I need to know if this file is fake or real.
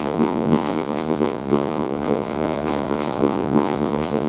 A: fake